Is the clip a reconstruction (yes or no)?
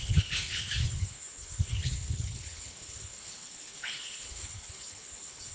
yes